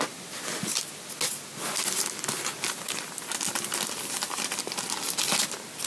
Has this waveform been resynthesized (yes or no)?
no